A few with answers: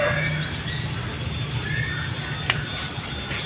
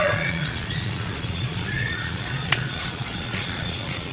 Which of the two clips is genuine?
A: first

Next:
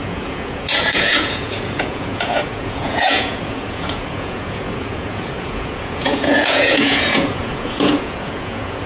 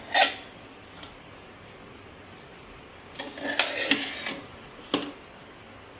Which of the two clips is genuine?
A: second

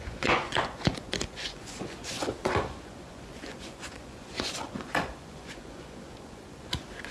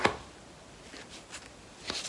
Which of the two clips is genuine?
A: second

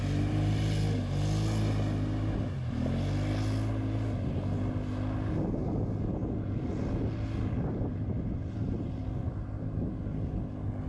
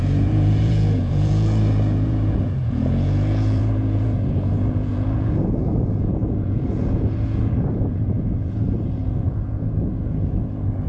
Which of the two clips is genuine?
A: first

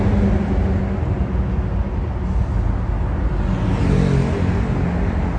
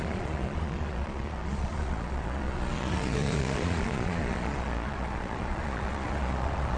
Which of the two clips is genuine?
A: first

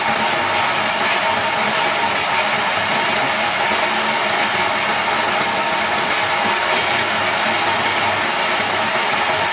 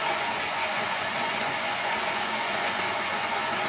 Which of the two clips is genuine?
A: first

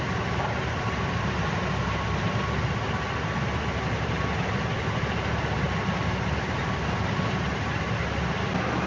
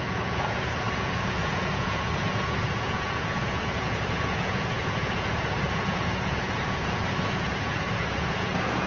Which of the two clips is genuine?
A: first